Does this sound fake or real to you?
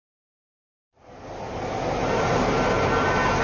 real